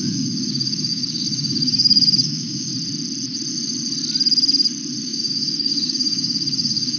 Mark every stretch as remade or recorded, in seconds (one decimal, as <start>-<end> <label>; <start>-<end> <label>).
0.0-2.7 remade; 2.7-5.0 recorded; 5.0-7.0 remade